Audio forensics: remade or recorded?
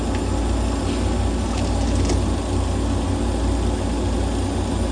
recorded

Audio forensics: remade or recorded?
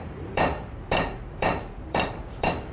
remade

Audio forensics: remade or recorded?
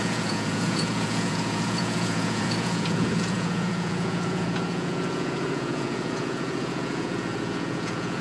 remade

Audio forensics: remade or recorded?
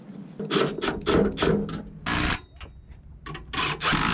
recorded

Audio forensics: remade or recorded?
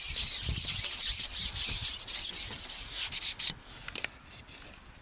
recorded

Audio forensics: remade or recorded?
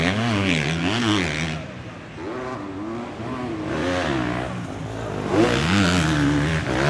recorded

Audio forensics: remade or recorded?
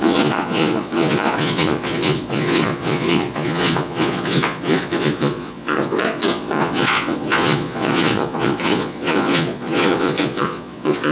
remade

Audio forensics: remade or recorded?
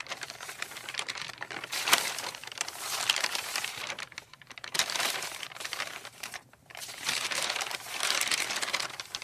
remade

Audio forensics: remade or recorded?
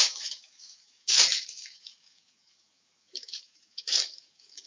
remade